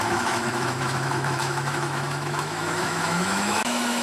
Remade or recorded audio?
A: remade